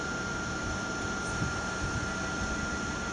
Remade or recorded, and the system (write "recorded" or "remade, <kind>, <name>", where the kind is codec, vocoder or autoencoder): recorded